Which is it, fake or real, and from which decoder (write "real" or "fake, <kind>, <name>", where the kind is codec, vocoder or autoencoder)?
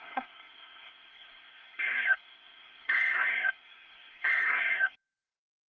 fake, codec, SNAC